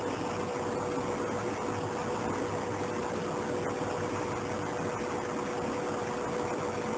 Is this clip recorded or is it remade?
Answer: recorded